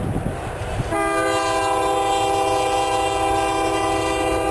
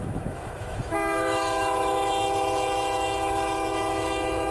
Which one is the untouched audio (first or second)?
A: first